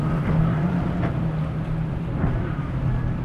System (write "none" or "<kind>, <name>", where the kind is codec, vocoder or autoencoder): vocoder, BigVGAN v2